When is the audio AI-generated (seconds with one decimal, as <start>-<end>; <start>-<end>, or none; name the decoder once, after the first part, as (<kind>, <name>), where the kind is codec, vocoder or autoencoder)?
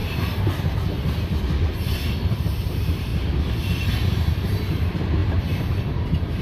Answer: 2.4-3.1 (vocoder, BigVGAN v2); 3.9-6.4